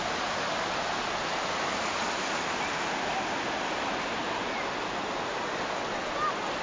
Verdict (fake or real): real